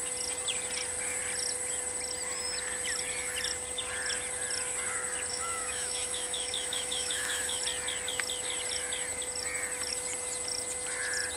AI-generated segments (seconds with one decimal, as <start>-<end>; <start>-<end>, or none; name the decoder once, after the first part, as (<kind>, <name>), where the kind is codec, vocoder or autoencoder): 5.3-7.6 (autoencoder, DAC-VAE)